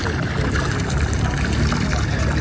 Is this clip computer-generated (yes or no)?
no